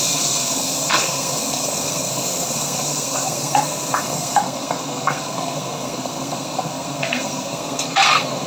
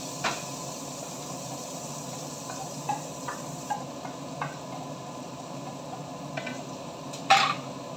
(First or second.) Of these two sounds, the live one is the second